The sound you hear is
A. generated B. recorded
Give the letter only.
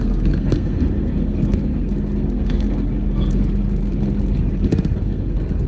A